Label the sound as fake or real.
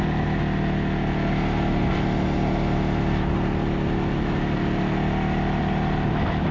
real